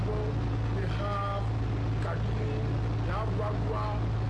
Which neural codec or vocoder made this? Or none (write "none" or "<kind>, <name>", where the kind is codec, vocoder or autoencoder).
none